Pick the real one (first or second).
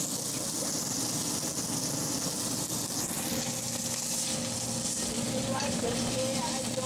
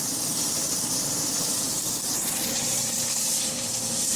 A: first